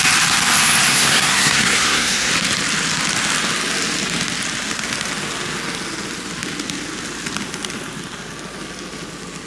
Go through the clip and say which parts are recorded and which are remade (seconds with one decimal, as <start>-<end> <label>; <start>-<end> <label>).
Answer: 0.0-0.9 recorded; 0.9-2.3 remade; 2.3-9.5 recorded